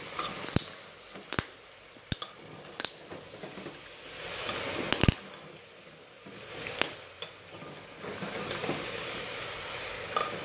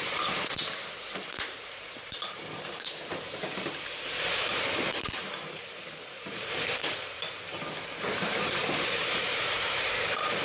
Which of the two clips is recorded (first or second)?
first